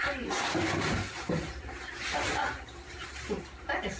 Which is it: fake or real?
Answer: fake